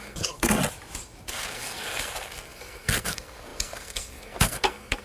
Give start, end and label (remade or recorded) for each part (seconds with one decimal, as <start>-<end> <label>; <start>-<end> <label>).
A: 0.0-0.6 remade; 0.6-1.3 recorded; 1.3-5.0 remade